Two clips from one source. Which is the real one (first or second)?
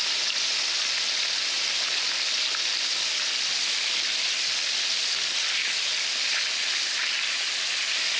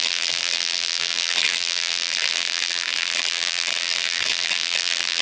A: first